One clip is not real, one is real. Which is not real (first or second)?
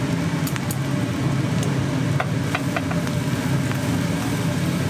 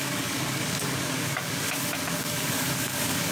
second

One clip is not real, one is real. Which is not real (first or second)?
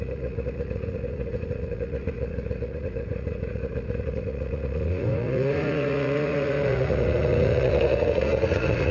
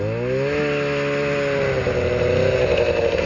first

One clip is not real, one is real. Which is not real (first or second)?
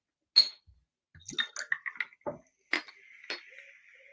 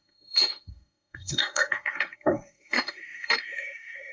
second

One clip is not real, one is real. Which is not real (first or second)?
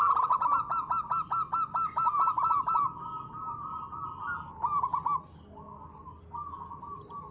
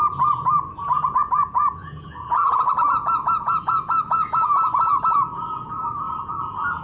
second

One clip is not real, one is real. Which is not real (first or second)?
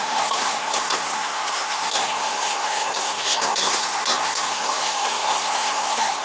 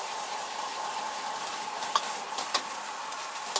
first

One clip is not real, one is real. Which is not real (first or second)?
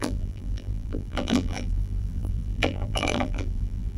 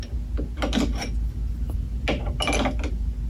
first